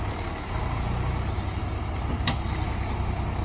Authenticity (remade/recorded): recorded